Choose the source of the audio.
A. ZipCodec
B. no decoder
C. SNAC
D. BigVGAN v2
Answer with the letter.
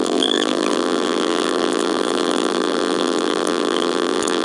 D